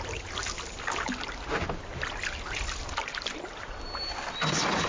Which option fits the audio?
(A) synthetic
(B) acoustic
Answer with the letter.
B